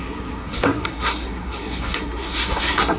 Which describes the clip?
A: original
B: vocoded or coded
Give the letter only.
B